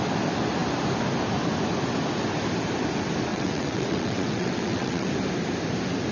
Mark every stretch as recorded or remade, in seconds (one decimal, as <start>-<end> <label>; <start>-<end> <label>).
0.0-3.3 recorded; 3.3-5.1 remade; 5.1-6.1 recorded